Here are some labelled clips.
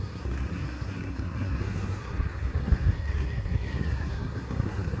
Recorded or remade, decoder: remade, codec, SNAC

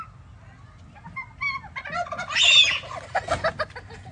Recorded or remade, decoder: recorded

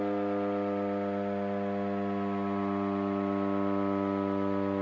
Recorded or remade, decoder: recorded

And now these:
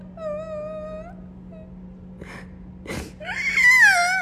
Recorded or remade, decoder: recorded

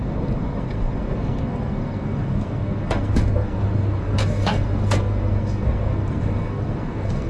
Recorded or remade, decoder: remade, codec, SNAC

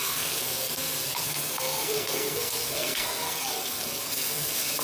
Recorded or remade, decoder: remade, codec, SNAC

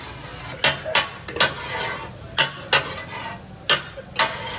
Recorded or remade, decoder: recorded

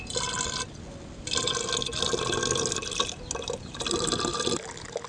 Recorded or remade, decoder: recorded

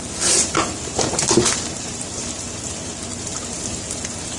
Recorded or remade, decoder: recorded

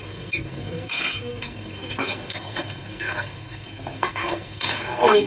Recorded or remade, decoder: remade, codec, SNAC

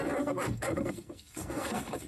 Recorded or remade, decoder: remade, codec, SNAC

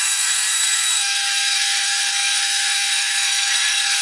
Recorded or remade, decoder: remade, codec, SNAC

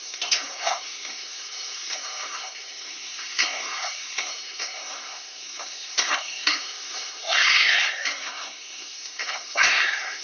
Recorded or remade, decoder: remade, codec, SNAC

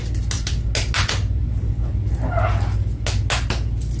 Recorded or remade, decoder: recorded